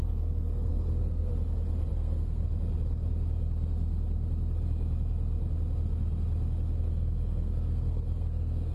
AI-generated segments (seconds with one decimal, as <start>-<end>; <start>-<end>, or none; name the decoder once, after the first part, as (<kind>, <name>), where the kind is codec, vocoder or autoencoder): 0.0-1.3 (codec, SNAC); 1.9-2.4; 6.8-8.7